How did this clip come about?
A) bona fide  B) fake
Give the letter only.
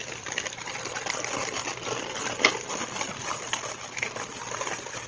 A